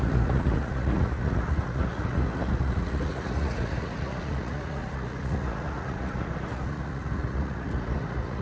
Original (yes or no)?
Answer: no